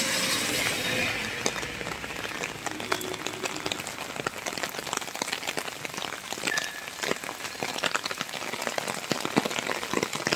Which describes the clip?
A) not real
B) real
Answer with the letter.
B